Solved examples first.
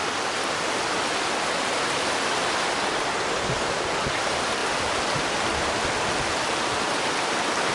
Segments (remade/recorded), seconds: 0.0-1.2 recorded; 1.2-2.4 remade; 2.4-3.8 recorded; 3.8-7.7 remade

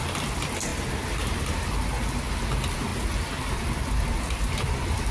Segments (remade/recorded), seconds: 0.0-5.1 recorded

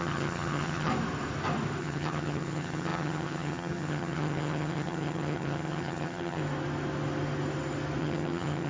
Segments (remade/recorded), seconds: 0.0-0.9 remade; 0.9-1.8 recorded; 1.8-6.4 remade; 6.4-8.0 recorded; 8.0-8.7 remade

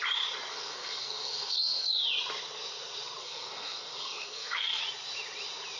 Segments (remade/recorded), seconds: 0.0-0.5 recorded; 0.5-2.0 remade; 2.0-3.2 recorded; 3.2-4.8 remade; 4.8-5.8 recorded

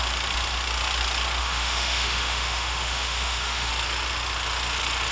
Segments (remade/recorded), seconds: 0.0-1.4 recorded; 1.4-3.7 remade; 3.7-5.1 recorded

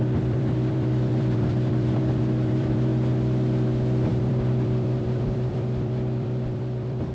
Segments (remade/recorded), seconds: 0.0-2.9 remade; 2.9-4.1 recorded; 4.1-7.1 remade